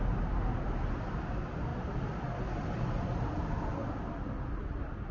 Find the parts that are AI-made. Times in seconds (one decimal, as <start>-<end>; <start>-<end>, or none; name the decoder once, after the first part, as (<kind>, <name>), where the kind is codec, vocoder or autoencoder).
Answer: none